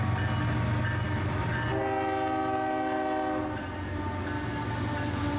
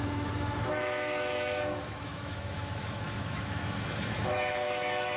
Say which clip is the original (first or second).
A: first